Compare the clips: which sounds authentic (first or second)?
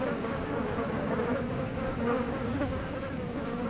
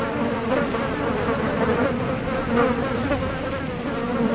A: second